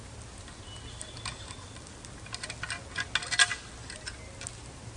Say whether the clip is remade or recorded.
recorded